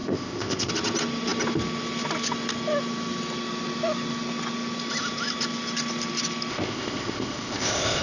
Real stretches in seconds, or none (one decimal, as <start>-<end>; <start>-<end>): 0.7-6.5